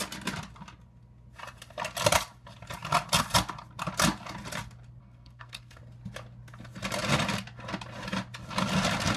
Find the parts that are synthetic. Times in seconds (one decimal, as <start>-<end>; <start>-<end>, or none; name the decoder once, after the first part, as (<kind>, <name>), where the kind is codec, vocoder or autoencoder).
5.0-5.8 (codec, SNAC)